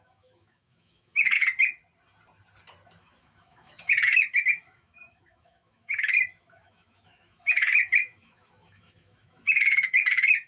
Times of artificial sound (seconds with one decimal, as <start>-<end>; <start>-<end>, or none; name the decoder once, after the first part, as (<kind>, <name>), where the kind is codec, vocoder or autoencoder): 0.0-1.4 (autoencoder, DAC-VAE); 3.0-10.5